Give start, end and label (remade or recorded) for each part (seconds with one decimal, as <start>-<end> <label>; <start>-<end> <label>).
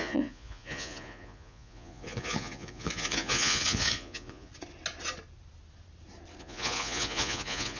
0.0-4.5 remade; 4.5-6.4 recorded; 6.4-7.8 remade